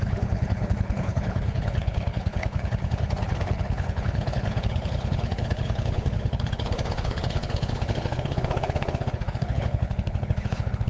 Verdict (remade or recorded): remade